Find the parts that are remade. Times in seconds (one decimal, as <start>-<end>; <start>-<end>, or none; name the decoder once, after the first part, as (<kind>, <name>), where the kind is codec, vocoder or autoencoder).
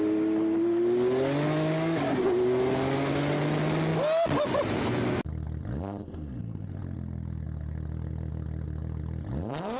none